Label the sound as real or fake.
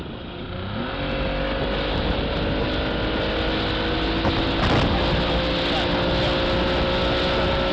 real